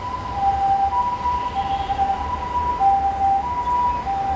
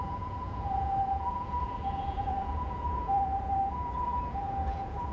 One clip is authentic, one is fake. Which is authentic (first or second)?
first